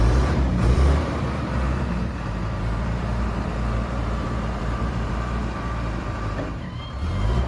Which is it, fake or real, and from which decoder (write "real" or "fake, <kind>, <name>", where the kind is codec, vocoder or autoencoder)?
fake, vocoder, BigVGAN v2